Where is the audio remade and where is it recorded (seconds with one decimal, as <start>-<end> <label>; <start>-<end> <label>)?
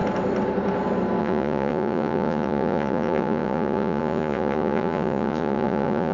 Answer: 0.0-1.2 recorded; 1.2-6.1 remade